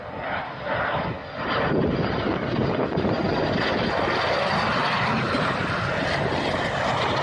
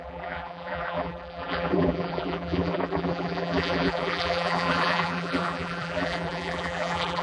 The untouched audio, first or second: first